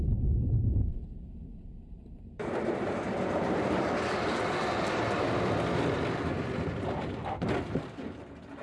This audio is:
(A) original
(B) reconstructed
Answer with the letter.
B